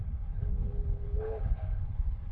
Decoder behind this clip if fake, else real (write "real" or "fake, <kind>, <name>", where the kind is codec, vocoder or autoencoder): fake, codec, HILCodec